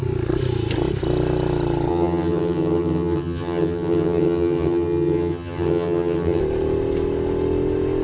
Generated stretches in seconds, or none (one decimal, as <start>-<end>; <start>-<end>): 1.9-6.4